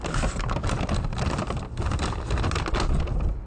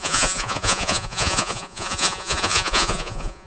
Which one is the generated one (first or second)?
second